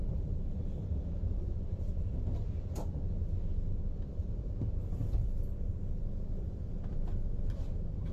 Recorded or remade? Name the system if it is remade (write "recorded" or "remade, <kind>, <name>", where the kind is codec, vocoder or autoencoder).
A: remade, vocoder, BigVGAN v2